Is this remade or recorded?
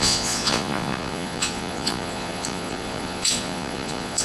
remade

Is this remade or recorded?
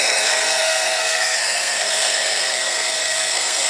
remade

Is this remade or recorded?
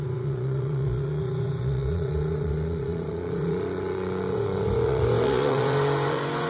remade